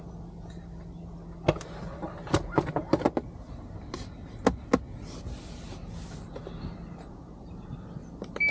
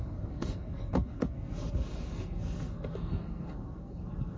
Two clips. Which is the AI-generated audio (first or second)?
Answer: second